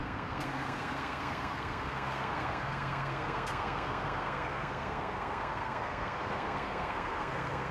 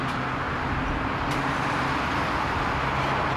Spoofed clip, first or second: first